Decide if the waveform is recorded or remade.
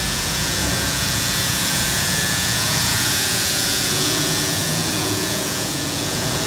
remade